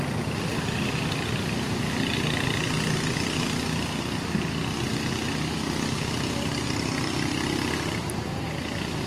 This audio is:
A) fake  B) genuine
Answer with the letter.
B